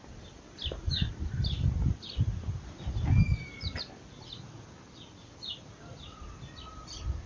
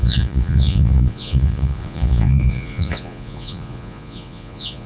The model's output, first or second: second